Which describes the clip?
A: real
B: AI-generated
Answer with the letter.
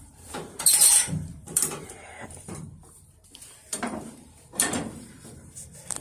B